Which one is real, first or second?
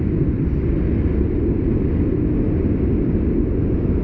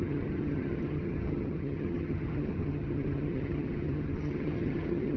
first